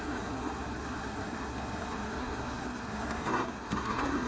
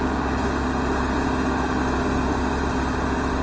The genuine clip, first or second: second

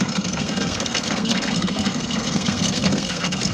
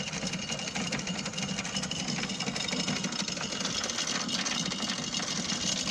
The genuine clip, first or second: second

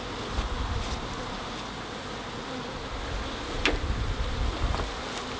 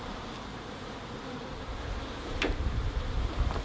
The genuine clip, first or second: first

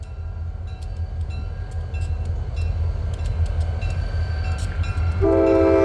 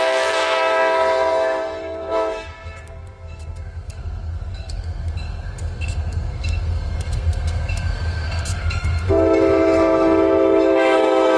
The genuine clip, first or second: first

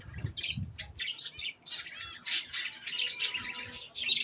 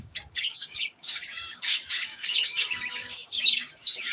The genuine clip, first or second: first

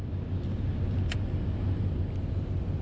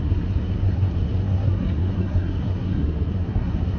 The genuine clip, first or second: first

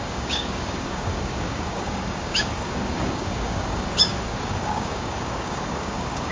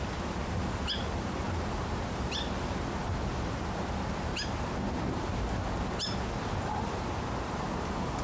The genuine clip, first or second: second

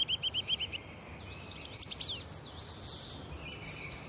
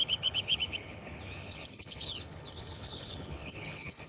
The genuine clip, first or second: first